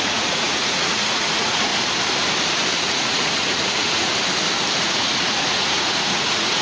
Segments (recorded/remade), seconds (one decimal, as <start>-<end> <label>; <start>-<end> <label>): 0.0-1.7 remade; 1.7-2.8 recorded; 2.8-4.1 remade; 4.1-4.8 recorded; 4.8-6.6 remade